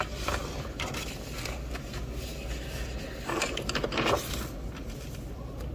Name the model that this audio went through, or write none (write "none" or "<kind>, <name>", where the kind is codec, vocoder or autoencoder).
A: none